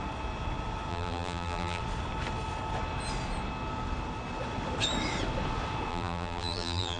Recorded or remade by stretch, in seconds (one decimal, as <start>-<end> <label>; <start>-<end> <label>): 0.0-0.9 recorded; 0.9-1.8 remade; 1.8-5.9 recorded; 5.9-7.0 remade